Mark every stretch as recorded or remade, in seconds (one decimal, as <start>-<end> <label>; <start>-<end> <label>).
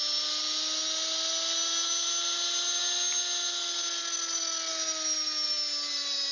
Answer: 0.0-6.3 recorded